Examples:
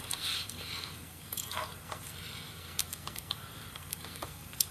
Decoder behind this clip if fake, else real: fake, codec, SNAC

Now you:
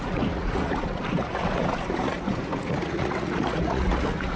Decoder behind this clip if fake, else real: fake, vocoder, Vocos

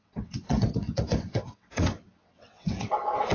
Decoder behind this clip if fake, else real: fake, vocoder, WaveNeXt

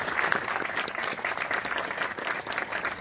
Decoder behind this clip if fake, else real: real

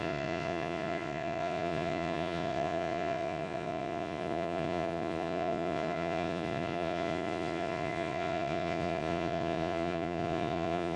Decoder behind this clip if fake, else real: fake, vocoder, Vocos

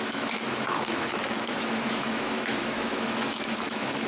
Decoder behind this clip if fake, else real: fake, autoencoder, DAC-VAE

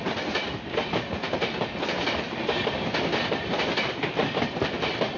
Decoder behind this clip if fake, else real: fake, vocoder, BigVGAN v2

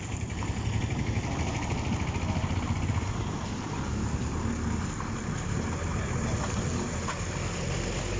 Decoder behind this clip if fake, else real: real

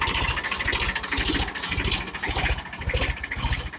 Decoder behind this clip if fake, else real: real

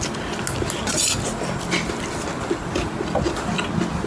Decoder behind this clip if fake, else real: real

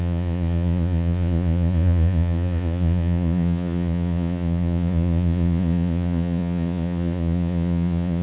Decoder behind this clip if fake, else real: fake, vocoder, Vocos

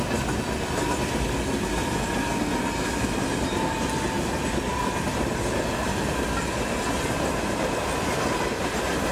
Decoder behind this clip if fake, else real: real